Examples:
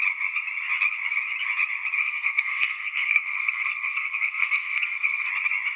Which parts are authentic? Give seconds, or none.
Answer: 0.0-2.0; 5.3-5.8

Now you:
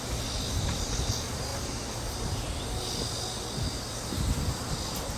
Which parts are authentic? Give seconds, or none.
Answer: 0.0-5.2

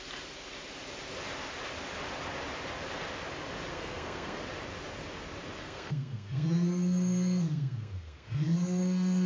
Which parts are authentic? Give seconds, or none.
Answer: 0.0-3.7; 4.4-5.6

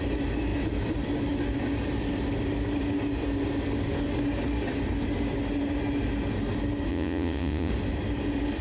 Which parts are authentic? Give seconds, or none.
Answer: 0.0-6.9; 7.7-8.6